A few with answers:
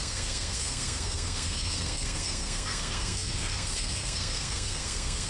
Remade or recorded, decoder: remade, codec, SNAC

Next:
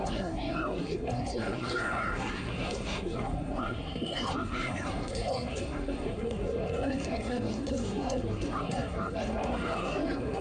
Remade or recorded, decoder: remade, codec, SNAC